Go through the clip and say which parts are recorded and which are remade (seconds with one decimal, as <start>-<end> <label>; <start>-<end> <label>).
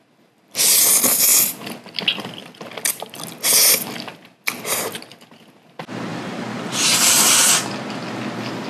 0.0-6.1 recorded; 6.1-7.5 remade; 7.5-8.7 recorded